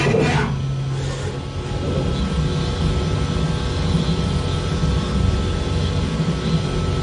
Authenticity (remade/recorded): recorded